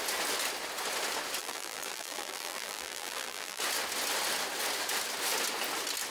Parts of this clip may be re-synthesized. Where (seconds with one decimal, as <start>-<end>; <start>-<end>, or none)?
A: 1.4-3.6